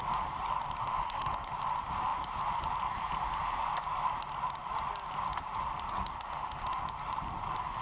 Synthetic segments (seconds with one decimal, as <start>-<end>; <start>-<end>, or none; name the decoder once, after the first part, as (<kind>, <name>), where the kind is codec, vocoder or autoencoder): 0.8-1.5 (autoencoder, DAC-VAE); 5.9-6.8

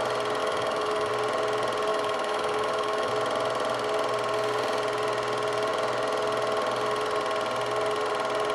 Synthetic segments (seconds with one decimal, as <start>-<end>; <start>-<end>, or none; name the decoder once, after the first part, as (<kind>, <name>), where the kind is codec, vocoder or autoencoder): 0.4-1.1 (autoencoder, DAC-VAE); 1.9-3.1

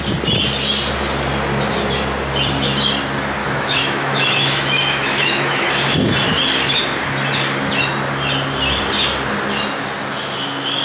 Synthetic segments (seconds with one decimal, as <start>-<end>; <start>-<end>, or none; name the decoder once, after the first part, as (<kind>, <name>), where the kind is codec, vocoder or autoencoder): 3.4-5.7 (autoencoder, DAC-VAE)

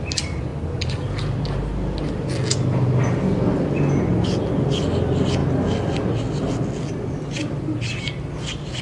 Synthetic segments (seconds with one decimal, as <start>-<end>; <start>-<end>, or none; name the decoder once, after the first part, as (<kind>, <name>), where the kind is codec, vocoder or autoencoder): none